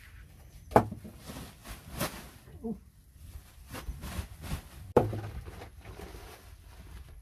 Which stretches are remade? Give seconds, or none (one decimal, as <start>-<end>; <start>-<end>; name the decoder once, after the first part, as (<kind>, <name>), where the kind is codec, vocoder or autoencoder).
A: 1.6-5.1 (vocoder, BigVGAN v2)